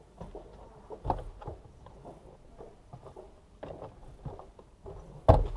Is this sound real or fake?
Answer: real